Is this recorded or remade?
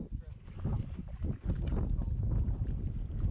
recorded